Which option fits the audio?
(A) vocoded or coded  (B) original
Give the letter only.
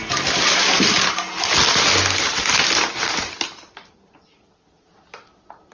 B